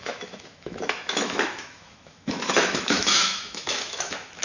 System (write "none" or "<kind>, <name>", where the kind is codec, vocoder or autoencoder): autoencoder, DAC-VAE